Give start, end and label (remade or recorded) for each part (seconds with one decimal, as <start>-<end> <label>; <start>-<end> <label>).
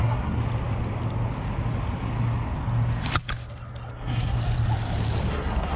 0.0-0.4 remade; 0.4-3.9 recorded; 3.9-4.4 remade; 4.4-5.3 recorded; 5.3-5.8 remade